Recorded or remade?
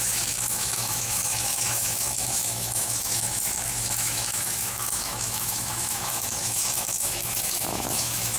remade